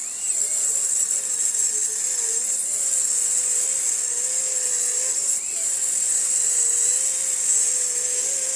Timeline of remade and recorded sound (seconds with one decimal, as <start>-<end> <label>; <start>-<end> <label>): 0.0-6.0 recorded; 6.0-6.6 remade; 6.6-8.6 recorded